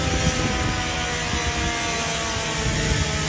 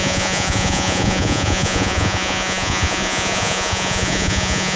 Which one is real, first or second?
first